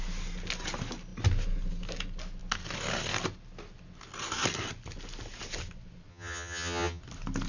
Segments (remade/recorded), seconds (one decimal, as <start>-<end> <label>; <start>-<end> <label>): 0.0-6.1 recorded; 6.1-7.0 remade; 7.0-7.5 recorded